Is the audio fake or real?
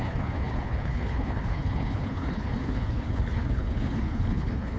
fake